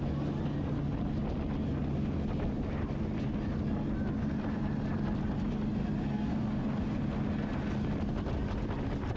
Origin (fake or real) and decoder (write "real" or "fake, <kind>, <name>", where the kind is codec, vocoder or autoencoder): real